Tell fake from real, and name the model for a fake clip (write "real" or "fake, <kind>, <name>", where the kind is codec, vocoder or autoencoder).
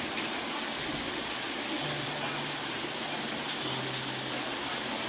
real